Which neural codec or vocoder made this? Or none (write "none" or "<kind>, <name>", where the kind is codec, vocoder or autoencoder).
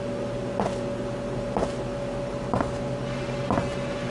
none